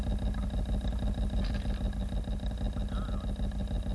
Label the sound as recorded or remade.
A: recorded